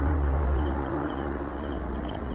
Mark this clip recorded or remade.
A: remade